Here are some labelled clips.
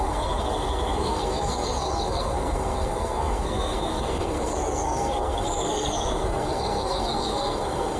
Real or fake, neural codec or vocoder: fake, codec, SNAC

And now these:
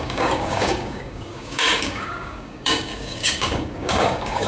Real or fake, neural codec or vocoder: fake, codec, DAC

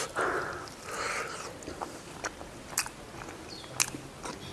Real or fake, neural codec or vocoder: real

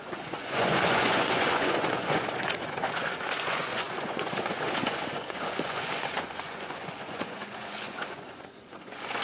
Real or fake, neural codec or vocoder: fake, vocoder, Vocos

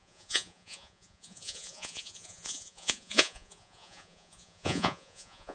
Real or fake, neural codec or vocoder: fake, vocoder, Vocos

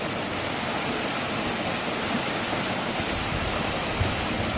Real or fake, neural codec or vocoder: real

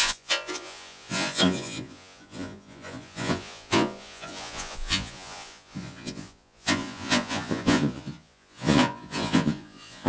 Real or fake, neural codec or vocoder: fake, vocoder, Vocos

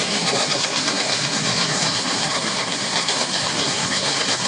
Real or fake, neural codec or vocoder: fake, codec, SNAC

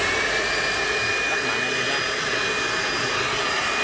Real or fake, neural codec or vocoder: real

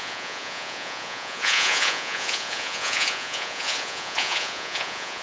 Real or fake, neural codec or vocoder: fake, vocoder, Vocos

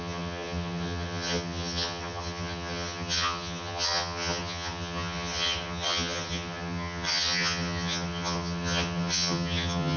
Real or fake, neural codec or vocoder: fake, vocoder, HiFi-GAN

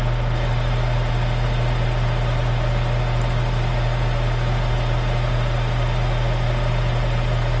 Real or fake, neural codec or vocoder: real